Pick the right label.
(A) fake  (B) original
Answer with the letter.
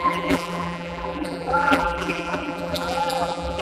A